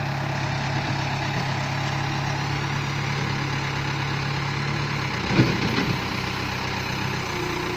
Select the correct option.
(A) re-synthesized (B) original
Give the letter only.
B